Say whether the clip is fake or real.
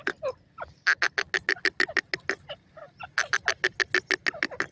real